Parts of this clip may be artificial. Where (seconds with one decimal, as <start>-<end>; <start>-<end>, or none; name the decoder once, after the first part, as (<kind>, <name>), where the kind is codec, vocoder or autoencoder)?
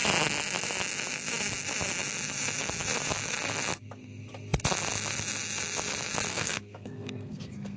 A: 6.3-7.8 (codec, SNAC)